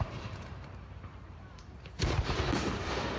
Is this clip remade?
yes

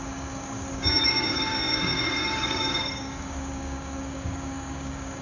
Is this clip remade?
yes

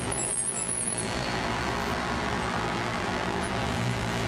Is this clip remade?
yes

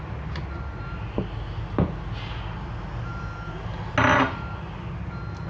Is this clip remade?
no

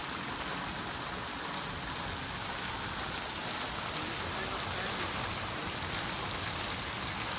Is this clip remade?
no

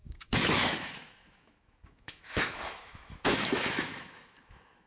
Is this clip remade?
yes